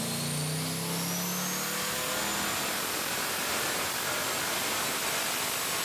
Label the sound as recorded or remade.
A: recorded